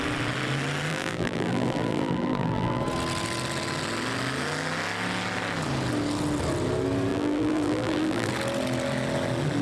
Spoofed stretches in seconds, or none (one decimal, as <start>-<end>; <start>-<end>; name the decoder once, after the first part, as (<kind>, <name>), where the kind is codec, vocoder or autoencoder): 0.9-2.8 (vocoder, BigVGAN v2); 7.1-8.3